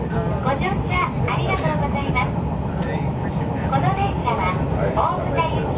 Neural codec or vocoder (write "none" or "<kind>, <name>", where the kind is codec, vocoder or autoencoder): none